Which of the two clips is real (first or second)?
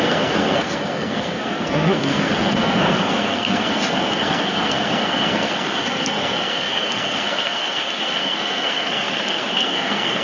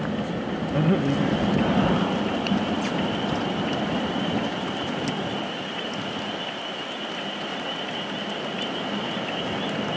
second